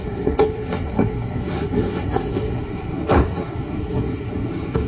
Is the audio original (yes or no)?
no